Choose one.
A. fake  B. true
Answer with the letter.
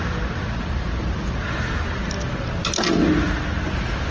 B